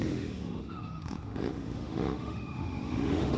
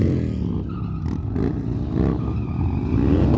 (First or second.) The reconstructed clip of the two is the first